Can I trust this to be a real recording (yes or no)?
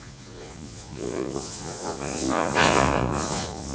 no